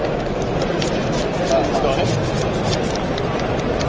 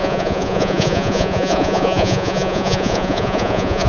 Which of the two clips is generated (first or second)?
second